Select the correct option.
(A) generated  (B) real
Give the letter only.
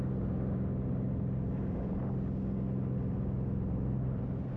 B